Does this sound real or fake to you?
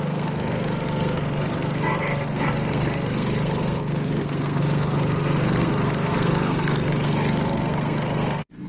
fake